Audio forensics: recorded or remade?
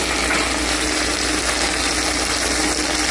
recorded